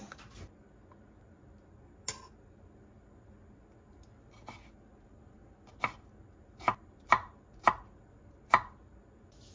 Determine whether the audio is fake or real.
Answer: real